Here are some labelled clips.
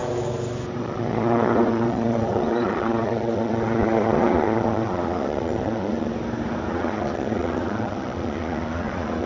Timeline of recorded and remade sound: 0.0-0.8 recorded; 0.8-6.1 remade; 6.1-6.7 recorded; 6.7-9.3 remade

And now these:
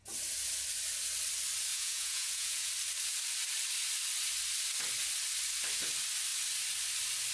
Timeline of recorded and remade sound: 0.0-1.7 recorded; 1.7-2.7 remade; 2.7-7.3 recorded

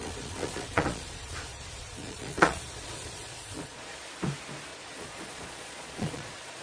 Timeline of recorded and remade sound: 0.0-4.0 remade; 4.0-4.7 recorded; 4.7-6.6 remade

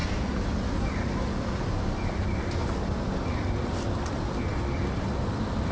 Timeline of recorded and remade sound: 0.0-5.7 recorded

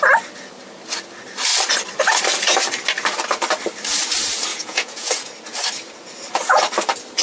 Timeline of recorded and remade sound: 0.0-4.5 recorded; 4.5-5.1 remade; 5.1-7.2 recorded

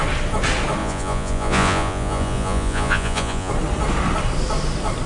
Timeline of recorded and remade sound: 0.0-0.8 recorded; 0.8-3.5 remade; 3.5-5.1 recorded